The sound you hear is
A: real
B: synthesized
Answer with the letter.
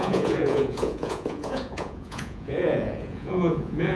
B